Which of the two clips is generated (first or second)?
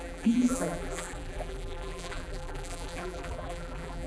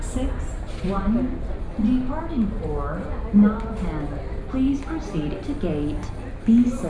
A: first